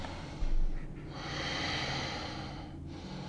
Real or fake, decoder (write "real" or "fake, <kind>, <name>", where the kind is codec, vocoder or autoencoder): real